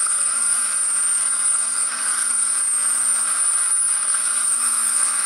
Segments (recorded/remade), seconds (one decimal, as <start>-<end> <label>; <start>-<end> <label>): 0.0-0.6 remade; 0.6-1.2 recorded; 1.2-2.5 remade; 2.5-3.9 recorded; 3.9-5.3 remade